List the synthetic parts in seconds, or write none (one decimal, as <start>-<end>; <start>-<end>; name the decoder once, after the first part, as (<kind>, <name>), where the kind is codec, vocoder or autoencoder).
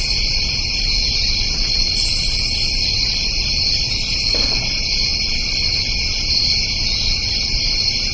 5.1-6.0 (vocoder, BigVGAN v2)